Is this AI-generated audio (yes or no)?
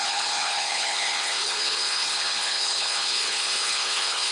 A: yes